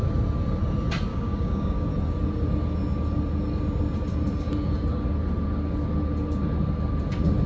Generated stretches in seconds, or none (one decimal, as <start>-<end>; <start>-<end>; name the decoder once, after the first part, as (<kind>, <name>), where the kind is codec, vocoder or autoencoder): 1.1-1.9 (codec, DAC)